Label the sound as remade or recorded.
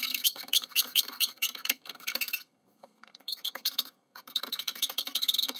remade